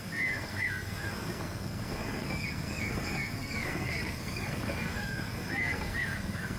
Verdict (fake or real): fake